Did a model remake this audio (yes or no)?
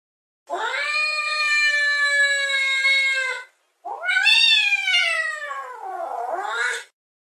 no